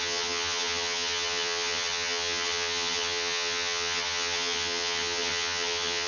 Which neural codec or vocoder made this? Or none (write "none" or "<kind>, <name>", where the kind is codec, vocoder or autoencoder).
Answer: vocoder, HiFi-GAN